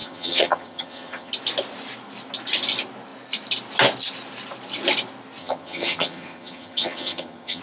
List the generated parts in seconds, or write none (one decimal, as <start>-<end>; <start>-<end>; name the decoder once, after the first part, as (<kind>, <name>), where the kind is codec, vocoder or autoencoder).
0.0-1.3 (vocoder, HiFi-GAN); 5.4-7.6